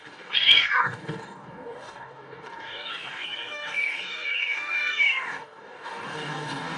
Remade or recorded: remade